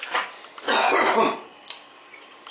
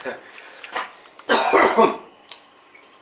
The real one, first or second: first